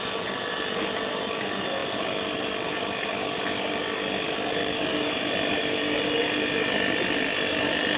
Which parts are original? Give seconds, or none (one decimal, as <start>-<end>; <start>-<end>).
0.0-4.6; 5.3-8.0